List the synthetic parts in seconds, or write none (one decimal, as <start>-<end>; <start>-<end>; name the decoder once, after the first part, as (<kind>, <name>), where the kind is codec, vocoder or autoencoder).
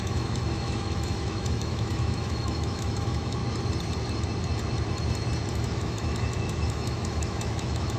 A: 0.0-3.4 (autoencoder, DAC-VAE); 5.5-8.0